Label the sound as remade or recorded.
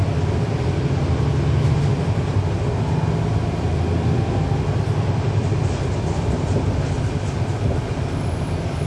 recorded